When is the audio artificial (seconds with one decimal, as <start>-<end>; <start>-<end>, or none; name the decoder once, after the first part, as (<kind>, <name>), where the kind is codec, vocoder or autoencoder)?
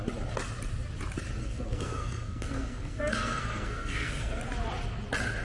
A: 1.4-4.4 (codec, SNAC)